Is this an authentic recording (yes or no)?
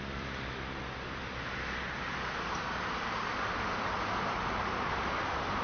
yes